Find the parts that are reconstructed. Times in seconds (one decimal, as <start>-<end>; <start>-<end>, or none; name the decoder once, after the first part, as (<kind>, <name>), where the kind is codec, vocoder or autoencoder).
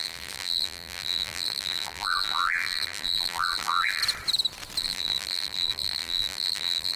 0.0-4.0 (vocoder, BigVGAN v2); 4.8-7.0